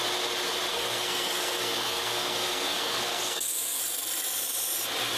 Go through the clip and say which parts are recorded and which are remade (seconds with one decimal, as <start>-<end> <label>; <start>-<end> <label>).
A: 0.0-0.7 recorded; 0.7-3.8 remade; 3.8-5.2 recorded